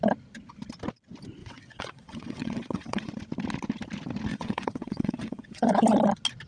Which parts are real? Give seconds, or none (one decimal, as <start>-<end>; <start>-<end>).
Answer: 0.0-1.4; 3.1-4.3; 5.7-6.5

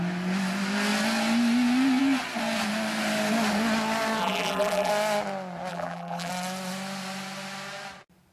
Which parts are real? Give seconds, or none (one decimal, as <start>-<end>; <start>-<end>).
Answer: 0.0-4.2; 4.9-5.7; 6.3-8.3

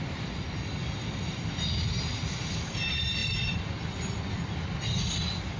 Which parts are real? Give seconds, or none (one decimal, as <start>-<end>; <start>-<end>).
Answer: 0.0-5.6

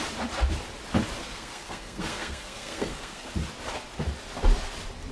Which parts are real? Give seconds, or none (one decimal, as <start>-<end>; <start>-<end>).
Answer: 0.0-1.2; 3.3-5.1